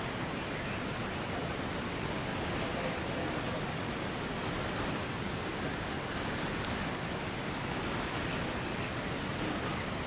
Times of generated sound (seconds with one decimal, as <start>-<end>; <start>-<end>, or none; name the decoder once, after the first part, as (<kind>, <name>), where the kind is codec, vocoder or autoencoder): none